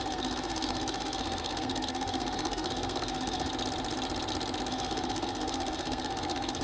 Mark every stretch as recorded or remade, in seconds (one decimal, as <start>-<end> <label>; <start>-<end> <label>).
0.0-3.5 remade; 3.5-4.7 recorded; 4.7-6.6 remade